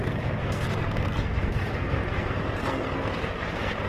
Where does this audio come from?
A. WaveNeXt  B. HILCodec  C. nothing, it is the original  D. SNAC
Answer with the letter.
D